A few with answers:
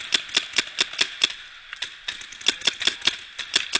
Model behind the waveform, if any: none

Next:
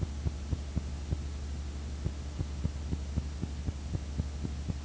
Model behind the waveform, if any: none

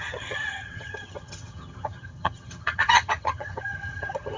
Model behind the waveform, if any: vocoder, HiFi-GAN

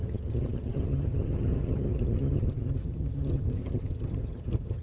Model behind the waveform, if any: vocoder, HiFi-GAN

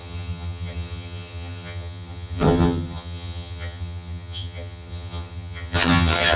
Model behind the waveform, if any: vocoder, HiFi-GAN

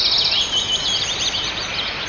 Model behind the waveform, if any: none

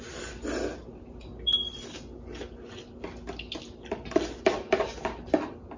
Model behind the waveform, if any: none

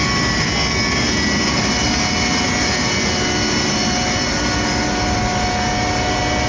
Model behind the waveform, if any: none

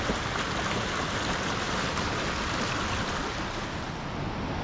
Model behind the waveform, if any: none